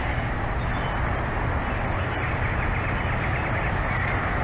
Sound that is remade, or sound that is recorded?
recorded